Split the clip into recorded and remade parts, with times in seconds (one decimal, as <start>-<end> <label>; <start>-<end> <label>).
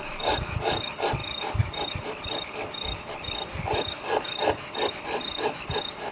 0.0-1.2 recorded; 1.2-4.9 remade; 4.9-6.1 recorded